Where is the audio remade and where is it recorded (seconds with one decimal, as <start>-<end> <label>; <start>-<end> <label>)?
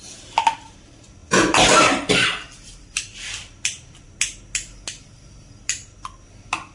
0.0-1.2 recorded; 1.2-4.1 remade; 4.1-6.7 recorded